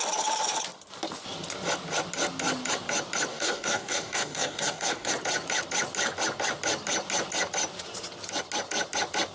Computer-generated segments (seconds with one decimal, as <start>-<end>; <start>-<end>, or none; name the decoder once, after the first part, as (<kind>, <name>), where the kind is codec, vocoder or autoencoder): 3.3-5.1 (codec, DAC)

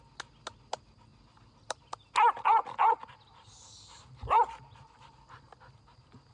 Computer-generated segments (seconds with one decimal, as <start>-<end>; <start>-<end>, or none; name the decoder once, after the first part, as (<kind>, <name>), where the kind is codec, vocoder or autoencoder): none

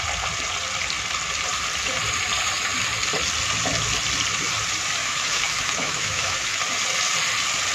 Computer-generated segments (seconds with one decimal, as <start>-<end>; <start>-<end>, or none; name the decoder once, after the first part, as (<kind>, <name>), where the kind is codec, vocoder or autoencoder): 5.0-6.6 (autoencoder, DAC-VAE)

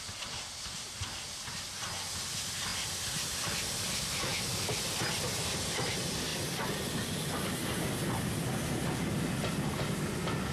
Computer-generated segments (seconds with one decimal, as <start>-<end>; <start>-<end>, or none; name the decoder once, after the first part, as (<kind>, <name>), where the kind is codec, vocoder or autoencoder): none

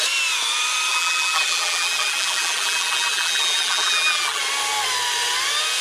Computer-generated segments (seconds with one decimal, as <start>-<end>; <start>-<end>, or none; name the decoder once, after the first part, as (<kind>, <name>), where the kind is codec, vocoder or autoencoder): 0.9-4.4 (vocoder, BigVGAN v2)

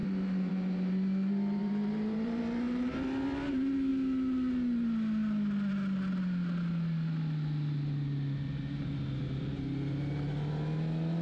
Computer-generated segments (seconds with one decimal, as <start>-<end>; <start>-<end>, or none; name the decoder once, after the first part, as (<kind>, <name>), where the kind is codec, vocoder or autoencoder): 0.0-0.5 (vocoder, BigVGAN v2); 1.6-2.4

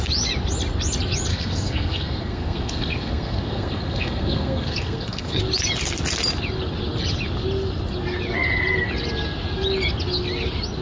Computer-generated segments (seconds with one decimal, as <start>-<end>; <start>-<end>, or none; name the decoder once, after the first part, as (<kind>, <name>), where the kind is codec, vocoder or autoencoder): 1.3-5.4 (codec, SNAC)

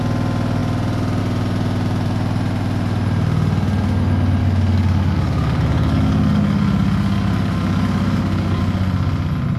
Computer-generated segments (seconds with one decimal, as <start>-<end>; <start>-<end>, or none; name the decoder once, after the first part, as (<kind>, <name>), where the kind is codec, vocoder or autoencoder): 4.4-8.6 (codec, DAC)